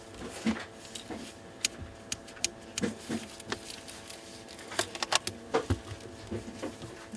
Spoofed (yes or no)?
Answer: no